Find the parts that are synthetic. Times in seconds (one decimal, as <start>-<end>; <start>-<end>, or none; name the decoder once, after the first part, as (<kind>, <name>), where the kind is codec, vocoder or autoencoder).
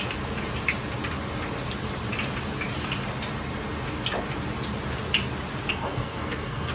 5.7-6.7 (codec, SNAC)